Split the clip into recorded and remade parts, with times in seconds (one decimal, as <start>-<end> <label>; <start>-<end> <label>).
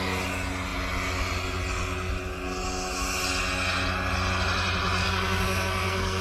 0.0-5.0 recorded; 5.0-6.2 remade